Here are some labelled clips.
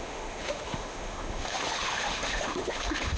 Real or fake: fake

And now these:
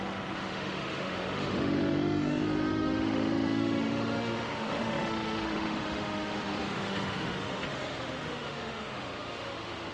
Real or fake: fake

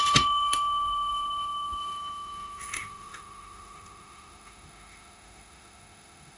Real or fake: fake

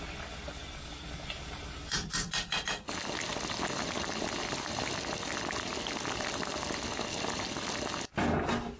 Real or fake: real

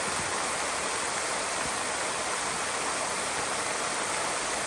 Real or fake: real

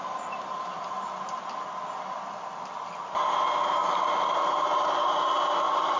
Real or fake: real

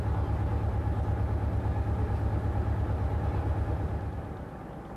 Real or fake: real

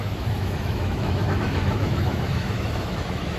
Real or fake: fake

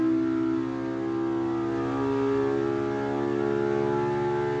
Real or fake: real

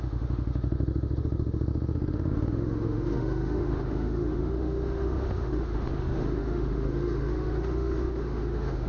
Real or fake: fake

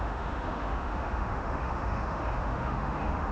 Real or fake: fake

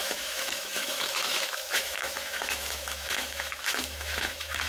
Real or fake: fake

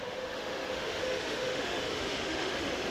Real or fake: fake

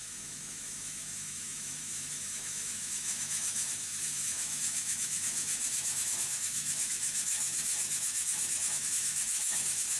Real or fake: fake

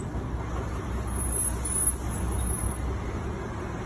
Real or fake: real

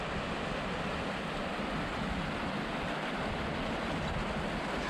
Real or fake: real